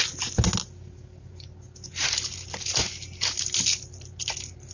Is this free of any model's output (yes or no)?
yes